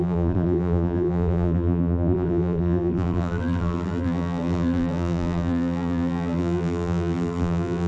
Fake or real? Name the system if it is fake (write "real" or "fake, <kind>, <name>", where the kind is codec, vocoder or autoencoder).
fake, vocoder, BigVGAN v2